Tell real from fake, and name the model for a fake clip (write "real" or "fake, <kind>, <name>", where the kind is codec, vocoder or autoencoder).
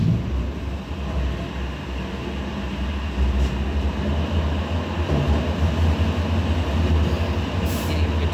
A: real